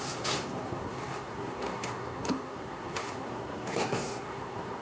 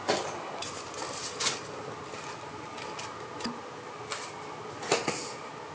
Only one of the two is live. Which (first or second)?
second